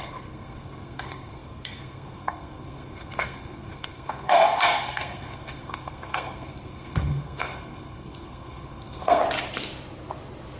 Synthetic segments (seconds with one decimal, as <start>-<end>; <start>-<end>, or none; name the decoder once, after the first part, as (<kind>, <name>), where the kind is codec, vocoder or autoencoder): 0.0-9.2 (codec, SNAC)